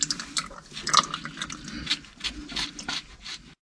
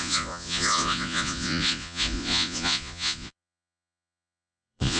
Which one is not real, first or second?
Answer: second